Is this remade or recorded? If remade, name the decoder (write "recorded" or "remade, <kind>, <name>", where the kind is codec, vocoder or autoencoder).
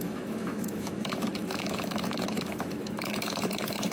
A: remade, autoencoder, DAC-VAE